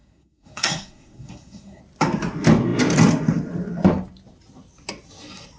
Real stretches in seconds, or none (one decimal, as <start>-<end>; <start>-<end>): 1.8-5.6